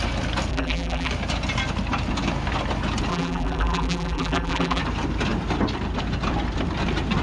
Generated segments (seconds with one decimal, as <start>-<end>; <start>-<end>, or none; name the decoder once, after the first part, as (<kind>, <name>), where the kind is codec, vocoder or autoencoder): 0.5-1.1 (vocoder, BigVGAN v2); 3.1-4.8